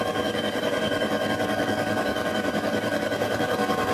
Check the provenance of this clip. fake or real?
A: fake